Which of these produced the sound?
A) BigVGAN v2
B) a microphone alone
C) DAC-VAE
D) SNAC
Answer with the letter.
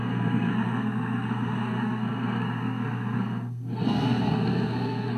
D